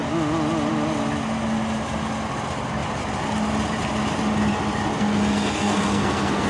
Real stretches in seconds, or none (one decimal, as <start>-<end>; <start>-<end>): 0.0-4.9